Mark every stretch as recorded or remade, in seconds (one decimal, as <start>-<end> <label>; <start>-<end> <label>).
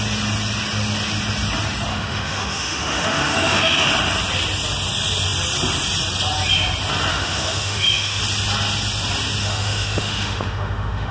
0.0-1.9 recorded; 1.9-3.9 remade; 3.9-7.1 recorded; 7.1-8.2 remade; 8.2-9.4 recorded; 9.4-11.1 remade